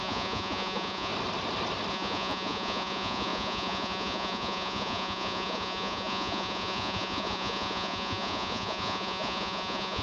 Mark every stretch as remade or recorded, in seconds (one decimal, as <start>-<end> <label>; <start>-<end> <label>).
0.0-1.1 remade; 1.1-1.9 recorded; 1.9-10.0 remade